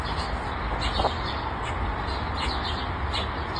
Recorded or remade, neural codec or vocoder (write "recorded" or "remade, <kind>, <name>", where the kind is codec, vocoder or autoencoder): recorded